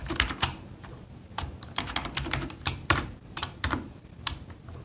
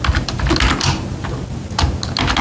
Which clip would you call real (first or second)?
second